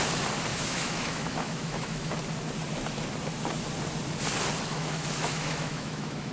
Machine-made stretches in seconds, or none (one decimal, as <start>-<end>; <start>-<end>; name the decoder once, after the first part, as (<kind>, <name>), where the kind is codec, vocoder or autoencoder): 0.5-2.1 (autoencoder, DAC-VAE); 4.7-6.3

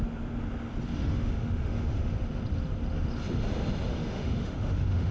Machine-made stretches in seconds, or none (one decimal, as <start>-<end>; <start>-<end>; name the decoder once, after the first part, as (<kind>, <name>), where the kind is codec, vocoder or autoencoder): 1.0-2.1 (autoencoder, DAC-VAE); 3.9-5.1